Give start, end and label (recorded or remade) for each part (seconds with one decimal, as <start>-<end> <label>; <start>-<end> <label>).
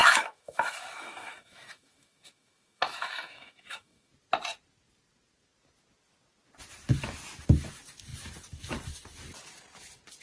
0.0-4.1 remade; 4.1-10.2 recorded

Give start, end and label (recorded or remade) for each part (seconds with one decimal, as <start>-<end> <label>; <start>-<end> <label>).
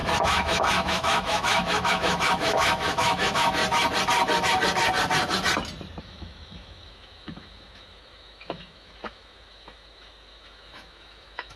0.0-3.6 remade; 3.6-6.0 recorded; 6.0-11.6 remade